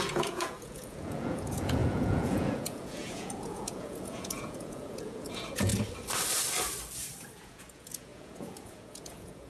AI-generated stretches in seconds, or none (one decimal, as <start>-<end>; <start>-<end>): 0.0-5.7; 7.4-9.5